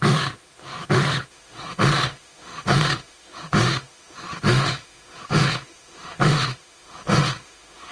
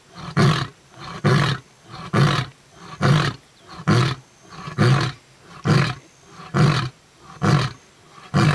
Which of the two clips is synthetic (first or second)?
first